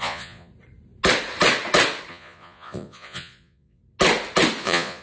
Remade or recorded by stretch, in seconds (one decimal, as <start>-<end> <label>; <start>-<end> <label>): 0.0-0.5 remade; 0.5-2.1 recorded; 2.1-3.8 remade; 3.8-4.6 recorded; 4.6-5.0 remade